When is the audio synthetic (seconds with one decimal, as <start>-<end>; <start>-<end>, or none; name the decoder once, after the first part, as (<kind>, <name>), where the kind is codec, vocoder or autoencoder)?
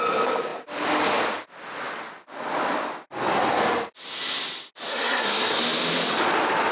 4.9-5.6 (codec, SNAC)